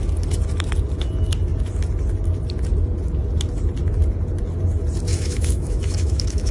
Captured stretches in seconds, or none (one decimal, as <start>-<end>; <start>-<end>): 0.0-5.1